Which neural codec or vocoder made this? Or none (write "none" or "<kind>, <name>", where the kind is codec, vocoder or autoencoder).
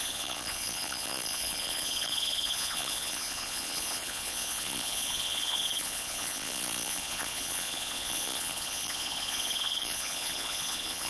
vocoder, Vocos